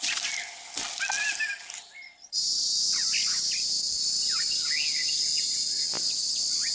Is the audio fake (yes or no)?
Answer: no